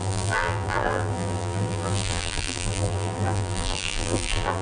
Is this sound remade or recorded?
remade